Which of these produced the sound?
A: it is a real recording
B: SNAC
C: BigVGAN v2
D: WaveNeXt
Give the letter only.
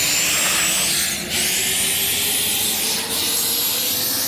A